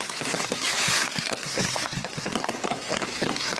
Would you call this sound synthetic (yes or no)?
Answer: yes